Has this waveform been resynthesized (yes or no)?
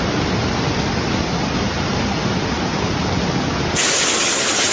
no